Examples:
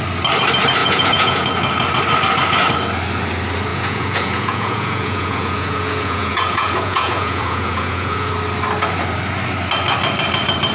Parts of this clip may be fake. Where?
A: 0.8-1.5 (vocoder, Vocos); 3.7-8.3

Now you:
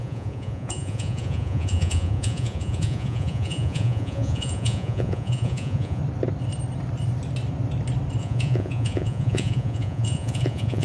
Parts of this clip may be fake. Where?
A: 0.0-6.0 (vocoder, Vocos); 8.2-10.8

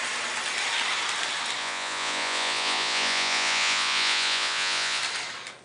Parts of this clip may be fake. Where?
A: 1.6-5.0 (vocoder, Vocos)

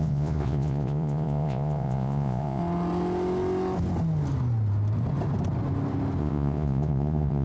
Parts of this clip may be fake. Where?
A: 0.0-2.6 (vocoder, Vocos); 6.2-7.4

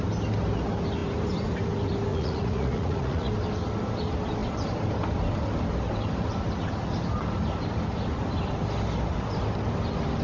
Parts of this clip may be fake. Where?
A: 2.1-3.3 (vocoder, Vocos)